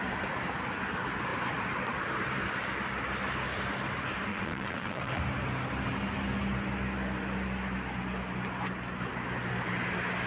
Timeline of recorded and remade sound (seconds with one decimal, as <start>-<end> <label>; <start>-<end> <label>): 0.0-4.3 recorded; 4.3-5.2 remade; 5.2-10.3 recorded